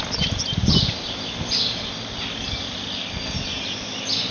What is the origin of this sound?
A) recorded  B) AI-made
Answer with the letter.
A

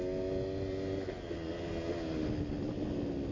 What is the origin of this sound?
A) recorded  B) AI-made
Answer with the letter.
A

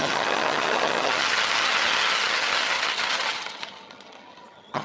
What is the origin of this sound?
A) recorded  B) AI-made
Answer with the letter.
B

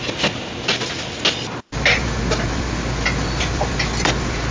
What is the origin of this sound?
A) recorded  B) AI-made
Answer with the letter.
A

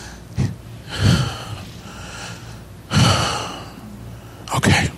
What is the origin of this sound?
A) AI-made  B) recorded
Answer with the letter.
B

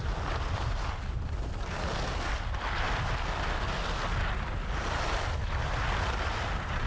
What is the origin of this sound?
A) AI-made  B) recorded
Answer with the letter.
B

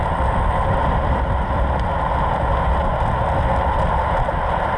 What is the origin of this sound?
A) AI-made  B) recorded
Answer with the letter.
B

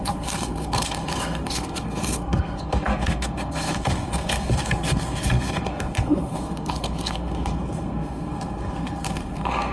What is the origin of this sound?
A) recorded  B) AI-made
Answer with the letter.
B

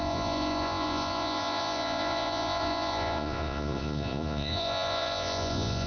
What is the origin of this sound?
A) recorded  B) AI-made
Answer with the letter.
B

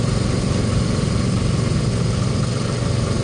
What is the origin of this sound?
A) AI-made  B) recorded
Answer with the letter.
B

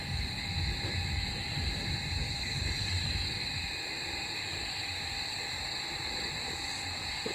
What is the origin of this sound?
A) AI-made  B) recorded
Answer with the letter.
B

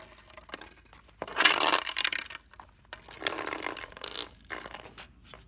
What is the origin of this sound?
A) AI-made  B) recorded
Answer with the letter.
B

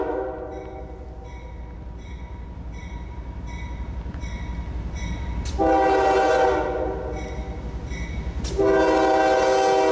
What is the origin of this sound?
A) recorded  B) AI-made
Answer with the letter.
A